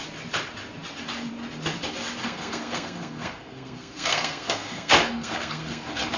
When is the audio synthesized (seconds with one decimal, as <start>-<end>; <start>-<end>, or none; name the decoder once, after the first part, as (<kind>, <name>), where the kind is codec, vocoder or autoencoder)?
2.2-6.2 (codec, SNAC)

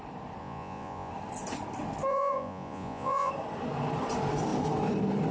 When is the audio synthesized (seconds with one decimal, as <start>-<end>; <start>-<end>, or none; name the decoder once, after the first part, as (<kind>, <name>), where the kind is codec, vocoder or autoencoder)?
0.4-1.1 (vocoder, Vocos); 2.1-3.3

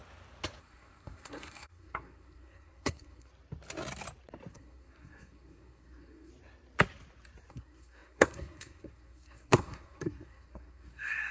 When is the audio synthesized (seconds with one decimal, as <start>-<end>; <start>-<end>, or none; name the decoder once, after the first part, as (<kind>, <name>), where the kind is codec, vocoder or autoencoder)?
0.6-3.3 (codec, SNAC); 4.5-6.3; 7.5-11.3